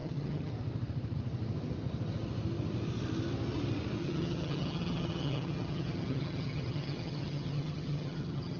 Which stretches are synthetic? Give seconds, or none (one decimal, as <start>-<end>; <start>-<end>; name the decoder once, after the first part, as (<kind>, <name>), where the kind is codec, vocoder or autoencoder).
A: 0.0-0.5 (vocoder, HiFi-GAN); 4.0-8.6